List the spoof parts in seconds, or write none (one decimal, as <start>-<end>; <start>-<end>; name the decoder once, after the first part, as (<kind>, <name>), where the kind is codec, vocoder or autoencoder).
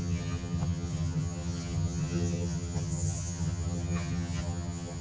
0.0-5.0 (vocoder, HiFi-GAN)